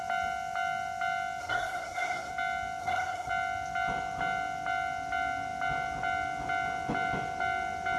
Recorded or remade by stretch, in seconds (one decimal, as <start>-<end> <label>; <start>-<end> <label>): 0.0-1.4 recorded; 1.4-2.3 remade; 2.3-2.8 recorded; 2.8-3.3 remade; 3.3-8.0 recorded